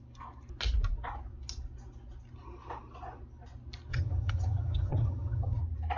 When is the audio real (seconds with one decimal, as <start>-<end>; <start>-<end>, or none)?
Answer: 0.0-3.9; 5.6-6.0